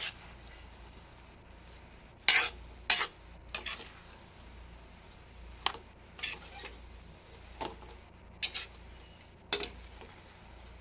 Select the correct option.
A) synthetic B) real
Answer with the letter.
B